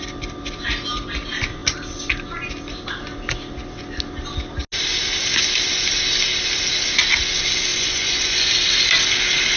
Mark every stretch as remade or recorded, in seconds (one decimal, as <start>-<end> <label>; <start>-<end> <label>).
0.0-7.7 recorded; 7.7-8.5 remade; 8.5-9.6 recorded